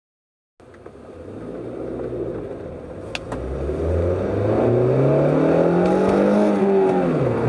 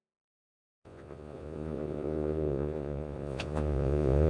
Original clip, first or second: first